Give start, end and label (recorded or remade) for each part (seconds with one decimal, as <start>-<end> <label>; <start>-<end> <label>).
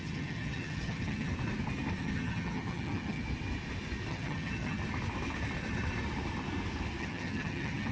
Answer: 0.0-1.3 remade; 1.3-2.0 recorded; 2.0-3.2 remade; 3.2-4.1 recorded; 4.1-4.8 remade; 4.8-7.0 recorded; 7.0-7.9 remade